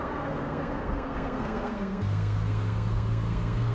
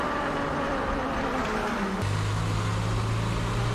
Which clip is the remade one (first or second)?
first